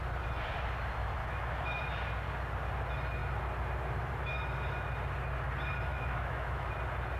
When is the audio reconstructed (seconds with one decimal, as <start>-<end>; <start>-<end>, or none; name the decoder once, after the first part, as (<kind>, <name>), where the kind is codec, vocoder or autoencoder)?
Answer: 1.2-1.8 (autoencoder, DAC-VAE); 5.9-6.7